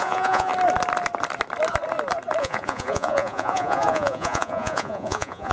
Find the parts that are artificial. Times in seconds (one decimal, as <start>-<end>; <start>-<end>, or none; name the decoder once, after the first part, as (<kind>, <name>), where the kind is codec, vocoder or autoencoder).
0.0-0.5 (vocoder, Vocos); 2.4-5.5